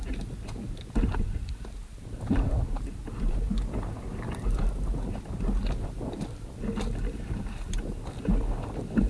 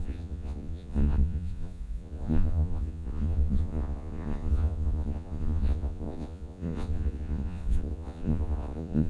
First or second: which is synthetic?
second